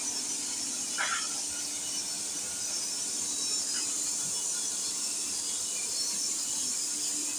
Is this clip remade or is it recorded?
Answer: remade